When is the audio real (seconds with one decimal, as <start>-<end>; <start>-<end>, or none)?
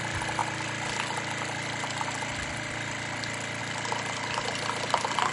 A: 0.0-5.3